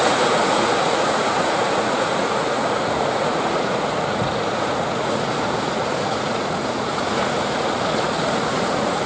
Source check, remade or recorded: remade